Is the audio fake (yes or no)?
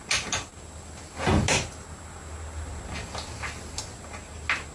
no